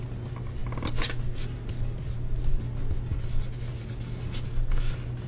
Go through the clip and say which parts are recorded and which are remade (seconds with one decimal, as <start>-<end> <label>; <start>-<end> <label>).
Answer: 0.0-5.3 recorded